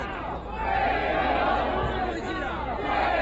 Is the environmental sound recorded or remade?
remade